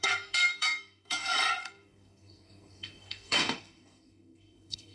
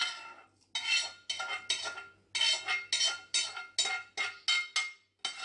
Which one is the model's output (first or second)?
first